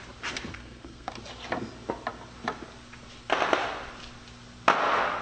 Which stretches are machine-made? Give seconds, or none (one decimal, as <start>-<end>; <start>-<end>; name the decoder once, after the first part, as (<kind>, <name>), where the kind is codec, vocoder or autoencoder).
0.5-1.1 (codec, SNAC)